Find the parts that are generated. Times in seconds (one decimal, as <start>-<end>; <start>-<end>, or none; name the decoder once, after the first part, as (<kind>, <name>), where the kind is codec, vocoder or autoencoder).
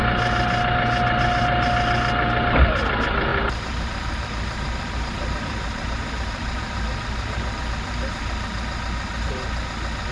3.3-7.6 (vocoder, BigVGAN v2)